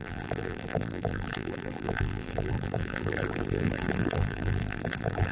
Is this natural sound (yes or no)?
no